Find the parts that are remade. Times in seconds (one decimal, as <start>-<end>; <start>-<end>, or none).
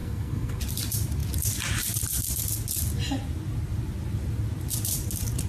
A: 0.0-0.6